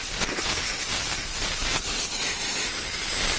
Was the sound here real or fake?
real